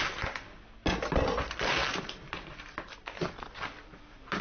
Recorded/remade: recorded